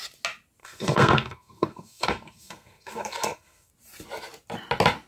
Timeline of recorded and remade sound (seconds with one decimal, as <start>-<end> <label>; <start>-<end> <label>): 0.0-0.6 recorded; 0.6-3.7 remade; 3.7-5.1 recorded